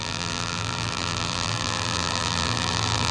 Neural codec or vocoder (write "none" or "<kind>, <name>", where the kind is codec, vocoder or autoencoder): vocoder, BigVGAN v2